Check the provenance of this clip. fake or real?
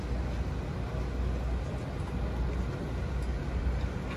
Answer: real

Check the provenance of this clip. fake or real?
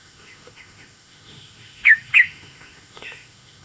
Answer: fake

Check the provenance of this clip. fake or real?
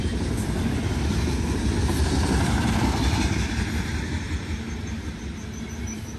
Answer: real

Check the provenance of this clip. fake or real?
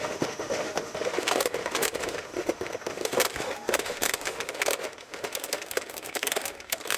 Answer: fake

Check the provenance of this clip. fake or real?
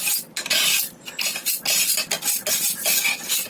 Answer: real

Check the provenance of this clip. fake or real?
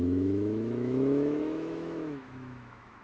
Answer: fake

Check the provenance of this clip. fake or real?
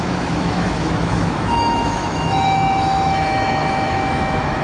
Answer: fake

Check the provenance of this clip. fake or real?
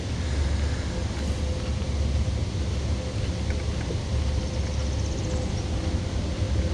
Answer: real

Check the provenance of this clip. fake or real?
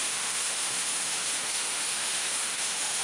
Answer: fake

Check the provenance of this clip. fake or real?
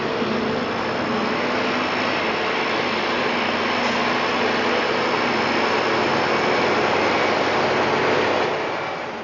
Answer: real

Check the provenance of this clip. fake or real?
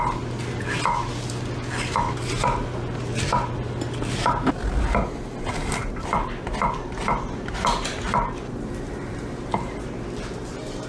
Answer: real